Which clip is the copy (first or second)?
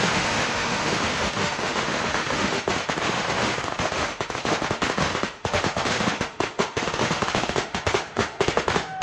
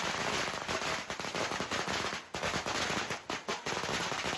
first